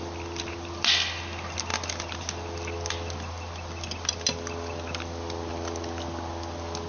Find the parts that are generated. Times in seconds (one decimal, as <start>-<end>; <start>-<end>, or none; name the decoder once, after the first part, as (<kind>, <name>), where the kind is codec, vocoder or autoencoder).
none